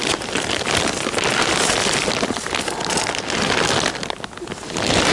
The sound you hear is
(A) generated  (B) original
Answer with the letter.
B